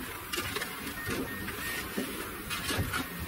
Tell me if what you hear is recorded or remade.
recorded